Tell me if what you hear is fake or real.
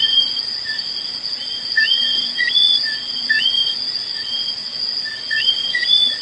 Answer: fake